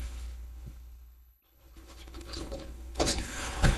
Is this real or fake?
fake